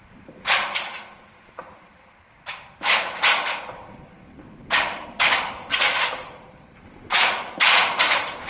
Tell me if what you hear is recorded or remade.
remade